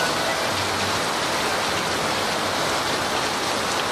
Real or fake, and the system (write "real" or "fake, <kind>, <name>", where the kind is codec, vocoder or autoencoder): real